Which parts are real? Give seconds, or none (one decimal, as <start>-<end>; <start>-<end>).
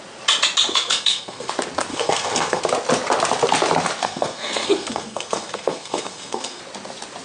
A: 0.0-0.7; 1.5-1.9; 2.6-4.0; 6.6-7.2